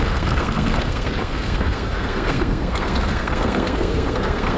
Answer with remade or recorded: remade